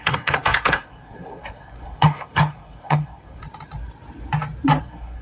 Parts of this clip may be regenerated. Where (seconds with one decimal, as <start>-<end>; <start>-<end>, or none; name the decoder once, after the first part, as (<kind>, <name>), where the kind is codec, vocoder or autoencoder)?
0.0-3.4 (codec, SNAC); 4.8-5.2

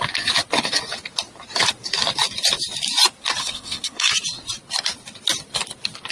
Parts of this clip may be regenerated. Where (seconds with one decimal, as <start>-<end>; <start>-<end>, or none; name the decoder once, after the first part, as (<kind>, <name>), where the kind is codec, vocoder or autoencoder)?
3.4-4.1 (codec, SNAC)

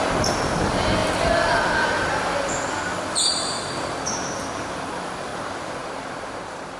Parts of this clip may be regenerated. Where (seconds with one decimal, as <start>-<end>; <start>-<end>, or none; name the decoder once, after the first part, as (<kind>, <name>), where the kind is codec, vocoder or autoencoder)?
none